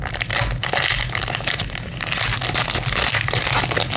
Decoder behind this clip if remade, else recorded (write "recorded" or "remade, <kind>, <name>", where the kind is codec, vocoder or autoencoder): recorded